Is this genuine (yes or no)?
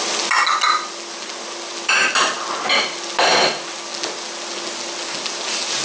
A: yes